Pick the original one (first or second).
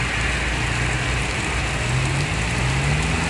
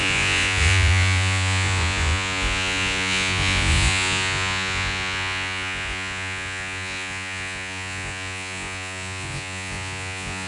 first